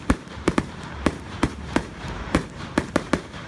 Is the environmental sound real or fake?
fake